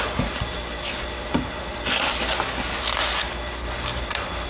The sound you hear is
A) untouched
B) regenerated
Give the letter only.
A